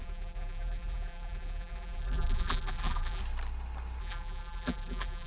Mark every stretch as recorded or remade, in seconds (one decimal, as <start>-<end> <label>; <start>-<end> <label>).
0.0-3.2 remade; 3.2-4.0 recorded; 4.0-5.3 remade